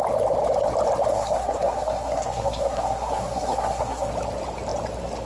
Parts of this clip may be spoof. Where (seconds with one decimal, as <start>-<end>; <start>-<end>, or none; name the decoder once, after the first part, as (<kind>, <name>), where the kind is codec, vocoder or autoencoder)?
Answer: 1.1-4.1 (codec, SNAC)